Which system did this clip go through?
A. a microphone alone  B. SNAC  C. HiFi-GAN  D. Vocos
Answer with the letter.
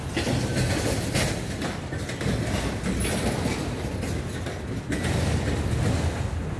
A